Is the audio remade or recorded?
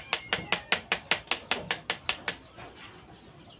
recorded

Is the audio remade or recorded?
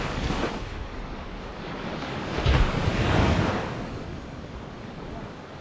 remade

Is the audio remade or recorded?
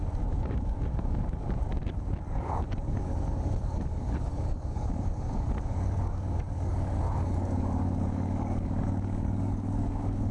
remade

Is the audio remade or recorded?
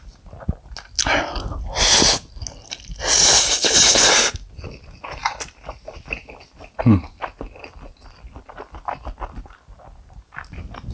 recorded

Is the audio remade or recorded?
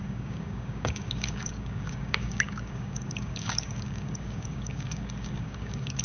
remade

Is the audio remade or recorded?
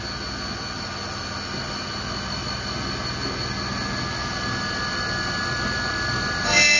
recorded